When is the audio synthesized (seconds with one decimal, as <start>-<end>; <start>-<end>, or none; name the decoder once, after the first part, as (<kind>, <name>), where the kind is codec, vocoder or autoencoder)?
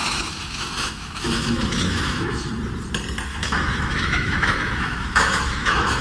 0.0-2.5 (autoencoder, DAC-VAE); 3.3-6.0